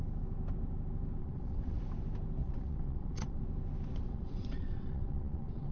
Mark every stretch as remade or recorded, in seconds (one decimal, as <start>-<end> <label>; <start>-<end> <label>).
0.0-1.2 recorded; 1.2-1.8 remade; 1.8-2.4 recorded; 2.4-3.4 remade; 3.4-3.9 recorded; 3.9-5.7 remade